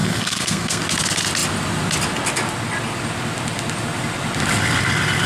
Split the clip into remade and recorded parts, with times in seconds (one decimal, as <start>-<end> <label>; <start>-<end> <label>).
0.0-0.8 remade; 0.8-5.3 recorded